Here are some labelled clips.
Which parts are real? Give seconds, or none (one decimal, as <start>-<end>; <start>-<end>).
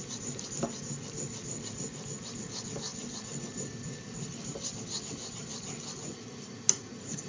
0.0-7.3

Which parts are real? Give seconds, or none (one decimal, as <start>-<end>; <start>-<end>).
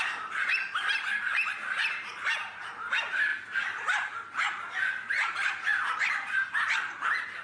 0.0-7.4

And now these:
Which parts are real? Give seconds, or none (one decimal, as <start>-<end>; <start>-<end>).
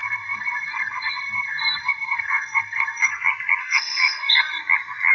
3.1-3.6; 4.6-5.1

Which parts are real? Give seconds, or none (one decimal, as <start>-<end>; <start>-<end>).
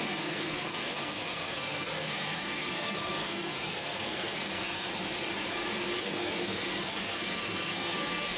4.9-6.0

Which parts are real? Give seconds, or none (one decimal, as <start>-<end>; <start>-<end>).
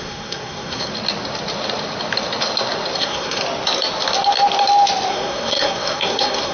0.9-3.0; 3.4-5.1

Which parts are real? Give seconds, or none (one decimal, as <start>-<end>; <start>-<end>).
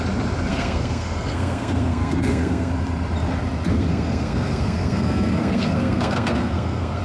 0.0-0.5; 2.7-3.7